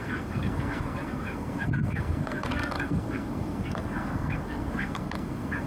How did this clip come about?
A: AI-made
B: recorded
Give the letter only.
A